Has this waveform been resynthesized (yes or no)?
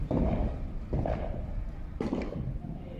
no